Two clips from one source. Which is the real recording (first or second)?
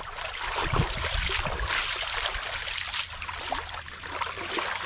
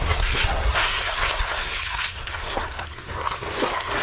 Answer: first